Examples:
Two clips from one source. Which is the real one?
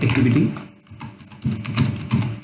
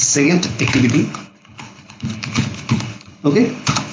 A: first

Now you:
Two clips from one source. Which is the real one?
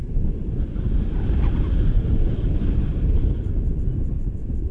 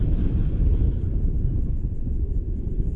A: first